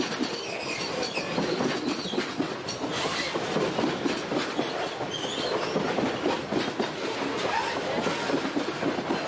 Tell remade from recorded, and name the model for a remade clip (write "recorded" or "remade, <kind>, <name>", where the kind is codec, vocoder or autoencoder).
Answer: recorded